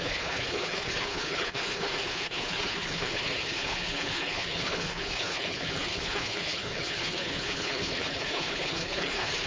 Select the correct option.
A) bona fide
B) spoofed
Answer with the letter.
B